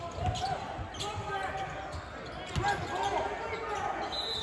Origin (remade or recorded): recorded